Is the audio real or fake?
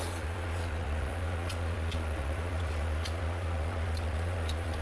fake